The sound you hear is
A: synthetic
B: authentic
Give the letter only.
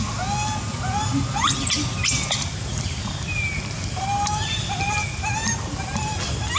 B